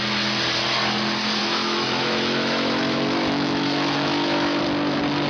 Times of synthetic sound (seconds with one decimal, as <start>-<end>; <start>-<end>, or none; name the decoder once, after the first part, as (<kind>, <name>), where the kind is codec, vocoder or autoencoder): 1.4-4.6 (autoencoder, DAC-VAE)